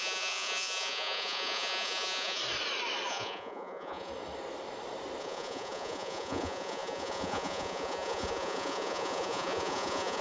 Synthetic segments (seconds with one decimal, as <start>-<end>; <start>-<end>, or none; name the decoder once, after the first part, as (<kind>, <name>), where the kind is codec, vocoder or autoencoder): 0.0-2.4 (vocoder, Vocos); 3.1-4.1; 5.2-10.2